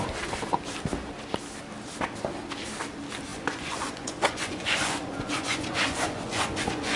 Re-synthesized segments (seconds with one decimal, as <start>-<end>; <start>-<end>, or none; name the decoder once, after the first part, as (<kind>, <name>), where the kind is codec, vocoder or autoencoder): 3.3-7.0 (vocoder, Vocos)